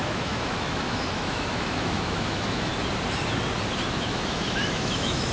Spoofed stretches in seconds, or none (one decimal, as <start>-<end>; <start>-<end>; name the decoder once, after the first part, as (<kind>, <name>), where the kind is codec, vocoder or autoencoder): 0.0-2.7 (autoencoder, DAC-VAE); 3.9-5.3